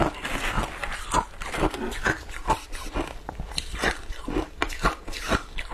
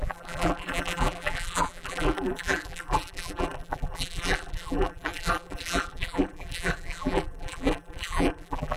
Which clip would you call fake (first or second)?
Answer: second